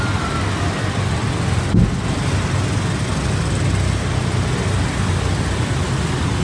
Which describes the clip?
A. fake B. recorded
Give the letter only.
B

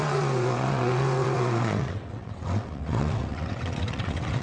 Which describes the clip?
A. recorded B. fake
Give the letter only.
B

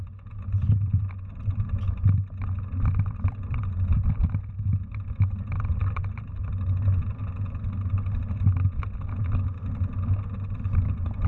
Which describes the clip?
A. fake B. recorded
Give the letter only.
B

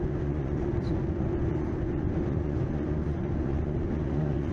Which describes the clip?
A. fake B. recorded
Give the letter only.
A